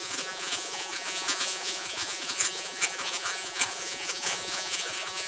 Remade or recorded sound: remade